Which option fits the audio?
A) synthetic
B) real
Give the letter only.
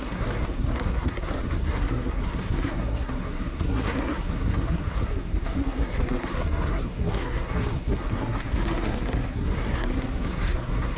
A